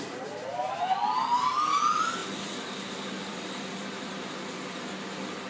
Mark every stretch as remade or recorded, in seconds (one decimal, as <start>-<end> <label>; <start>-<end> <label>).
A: 0.0-5.5 remade